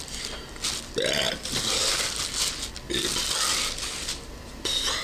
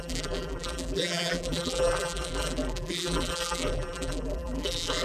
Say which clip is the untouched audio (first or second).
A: first